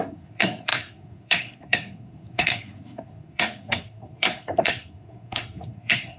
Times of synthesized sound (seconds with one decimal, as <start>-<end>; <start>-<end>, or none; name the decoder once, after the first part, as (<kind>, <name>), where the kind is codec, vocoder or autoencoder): 0.0-6.2 (codec, SNAC)

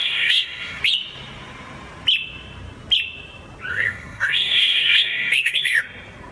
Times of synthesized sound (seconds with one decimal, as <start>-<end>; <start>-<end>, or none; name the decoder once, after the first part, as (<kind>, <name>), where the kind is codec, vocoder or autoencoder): 0.0-0.8 (codec, SNAC); 3.7-5.8

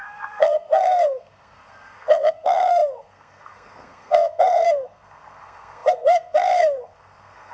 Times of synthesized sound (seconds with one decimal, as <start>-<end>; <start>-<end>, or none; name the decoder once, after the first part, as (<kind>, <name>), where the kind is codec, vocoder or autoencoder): 0.0-7.5 (codec, SNAC)

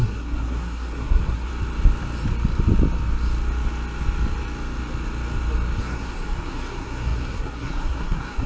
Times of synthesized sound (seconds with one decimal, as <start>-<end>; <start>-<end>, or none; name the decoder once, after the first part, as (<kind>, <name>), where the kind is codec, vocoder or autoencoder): 0.0-1.5 (codec, SNAC); 5.8-8.5

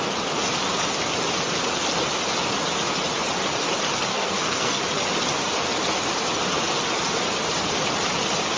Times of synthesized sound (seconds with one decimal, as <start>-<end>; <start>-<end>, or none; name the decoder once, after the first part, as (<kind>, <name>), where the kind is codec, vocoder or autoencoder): 4.1-4.8 (codec, SNAC)